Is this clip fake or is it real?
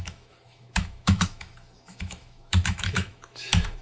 fake